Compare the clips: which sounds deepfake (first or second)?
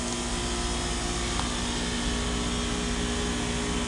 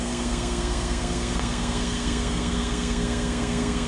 second